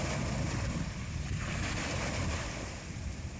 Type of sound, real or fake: real